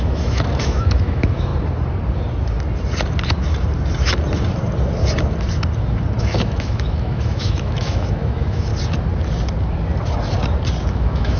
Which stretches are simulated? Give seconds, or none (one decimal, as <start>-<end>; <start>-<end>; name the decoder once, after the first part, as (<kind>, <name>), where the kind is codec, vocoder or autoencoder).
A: 0.0-1.5 (autoencoder, DAC-VAE); 6.2-8.7; 10.9-11.4

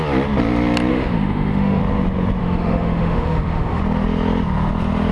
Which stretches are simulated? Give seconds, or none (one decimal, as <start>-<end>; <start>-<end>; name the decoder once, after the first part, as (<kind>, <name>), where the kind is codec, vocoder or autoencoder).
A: 0.9-1.8 (autoencoder, DAC-VAE); 2.4-3.8

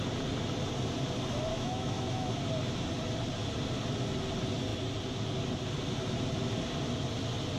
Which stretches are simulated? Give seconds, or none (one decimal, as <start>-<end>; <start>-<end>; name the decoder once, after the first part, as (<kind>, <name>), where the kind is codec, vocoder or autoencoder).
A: 1.5-2.3 (autoencoder, DAC-VAE)

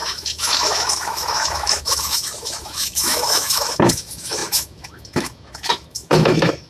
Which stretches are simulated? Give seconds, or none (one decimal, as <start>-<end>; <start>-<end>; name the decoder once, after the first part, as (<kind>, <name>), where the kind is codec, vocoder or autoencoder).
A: 0.0-6.7 (autoencoder, DAC-VAE)

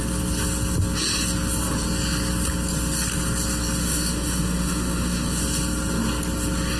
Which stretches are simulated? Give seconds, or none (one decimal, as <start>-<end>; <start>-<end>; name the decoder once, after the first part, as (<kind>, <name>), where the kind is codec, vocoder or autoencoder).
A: 3.8-5.4 (autoencoder, DAC-VAE)

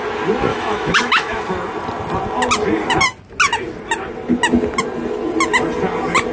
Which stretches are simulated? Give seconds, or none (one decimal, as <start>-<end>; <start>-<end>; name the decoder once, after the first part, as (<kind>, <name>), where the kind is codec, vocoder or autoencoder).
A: 0.5-1.4 (autoencoder, DAC-VAE)

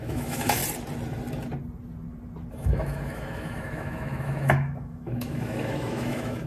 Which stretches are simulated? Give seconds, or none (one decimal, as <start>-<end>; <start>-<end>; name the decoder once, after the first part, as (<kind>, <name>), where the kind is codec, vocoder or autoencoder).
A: 0.0-0.6 (autoencoder, DAC-VAE); 2.5-6.5

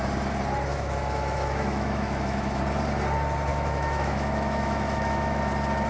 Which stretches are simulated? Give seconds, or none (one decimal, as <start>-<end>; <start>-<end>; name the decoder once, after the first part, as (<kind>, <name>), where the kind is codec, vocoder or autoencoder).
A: 0.7-2.6 (autoencoder, DAC-VAE); 3.5-5.4